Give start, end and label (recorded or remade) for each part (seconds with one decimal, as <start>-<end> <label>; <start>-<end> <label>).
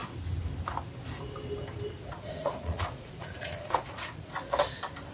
0.0-2.4 recorded; 2.4-4.3 remade; 4.3-5.1 recorded